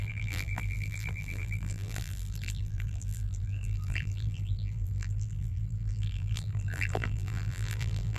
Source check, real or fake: fake